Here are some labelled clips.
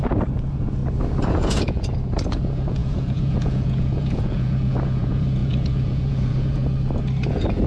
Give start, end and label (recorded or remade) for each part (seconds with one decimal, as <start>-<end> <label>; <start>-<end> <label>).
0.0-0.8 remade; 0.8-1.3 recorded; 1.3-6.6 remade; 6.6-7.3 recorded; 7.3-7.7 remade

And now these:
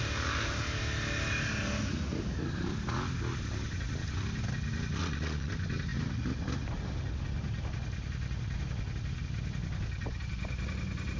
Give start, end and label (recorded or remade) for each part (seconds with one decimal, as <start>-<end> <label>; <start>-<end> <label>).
0.0-5.0 recorded; 5.0-5.5 remade; 5.5-11.2 recorded

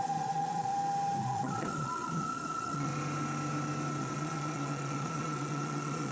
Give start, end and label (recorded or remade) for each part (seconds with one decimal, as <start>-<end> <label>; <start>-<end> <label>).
0.0-0.7 remade; 0.7-1.2 recorded; 1.2-2.9 remade; 2.9-4.0 recorded; 4.0-6.1 remade

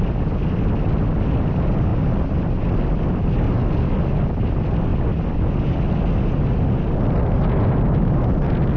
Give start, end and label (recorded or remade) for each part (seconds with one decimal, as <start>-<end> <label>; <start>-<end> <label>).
0.0-8.8 recorded